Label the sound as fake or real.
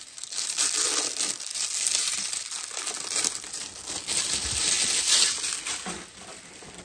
real